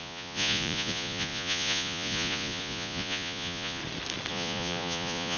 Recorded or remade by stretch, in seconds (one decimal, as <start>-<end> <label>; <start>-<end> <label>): 0.0-3.8 remade; 3.8-4.3 recorded; 4.3-5.4 remade